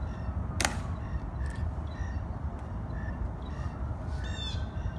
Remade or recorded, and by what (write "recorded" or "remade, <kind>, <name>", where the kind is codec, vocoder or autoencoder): recorded